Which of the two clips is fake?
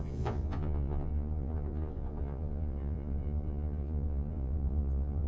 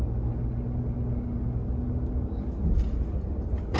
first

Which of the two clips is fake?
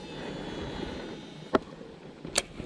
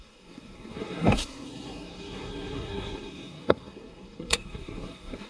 second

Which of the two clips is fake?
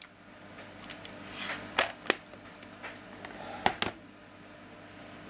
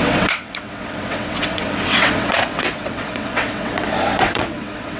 second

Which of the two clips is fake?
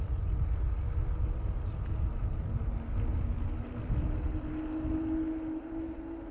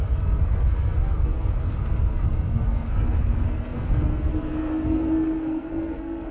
second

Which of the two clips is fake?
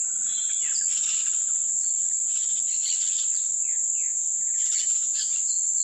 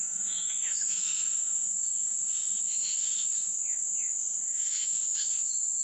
second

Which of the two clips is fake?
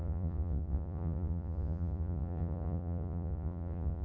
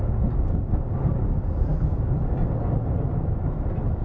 first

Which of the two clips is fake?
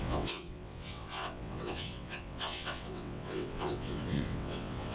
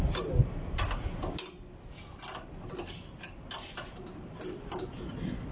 first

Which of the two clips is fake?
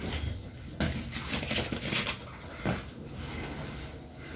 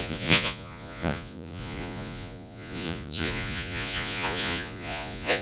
second